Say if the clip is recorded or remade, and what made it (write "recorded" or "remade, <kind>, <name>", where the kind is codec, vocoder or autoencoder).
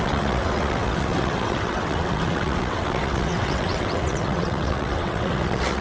remade, vocoder, WaveNeXt